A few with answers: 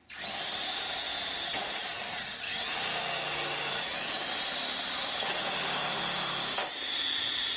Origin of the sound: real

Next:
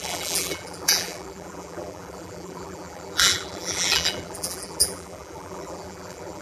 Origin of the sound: fake